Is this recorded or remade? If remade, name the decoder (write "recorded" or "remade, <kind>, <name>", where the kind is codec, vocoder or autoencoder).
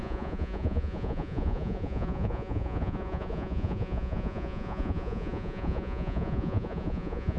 remade, vocoder, Vocos